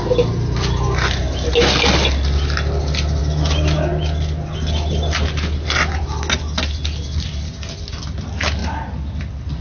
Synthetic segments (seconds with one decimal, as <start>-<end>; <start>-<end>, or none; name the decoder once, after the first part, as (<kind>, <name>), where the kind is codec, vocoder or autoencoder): none